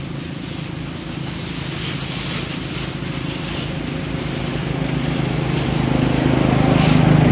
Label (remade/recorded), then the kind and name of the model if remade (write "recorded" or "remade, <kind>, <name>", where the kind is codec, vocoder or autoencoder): recorded